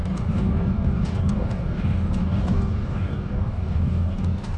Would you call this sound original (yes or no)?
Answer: no